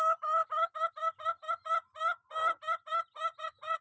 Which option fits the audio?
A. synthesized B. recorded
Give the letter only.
B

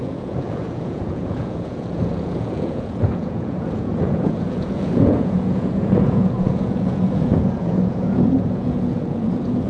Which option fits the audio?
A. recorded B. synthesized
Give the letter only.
B